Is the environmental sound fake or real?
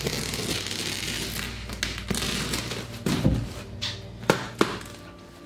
real